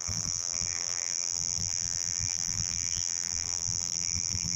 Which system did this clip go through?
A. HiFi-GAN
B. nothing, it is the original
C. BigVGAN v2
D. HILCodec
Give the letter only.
C